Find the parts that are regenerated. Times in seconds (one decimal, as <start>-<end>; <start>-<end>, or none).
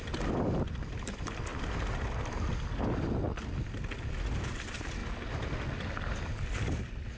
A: 0.0-1.5; 4.5-7.2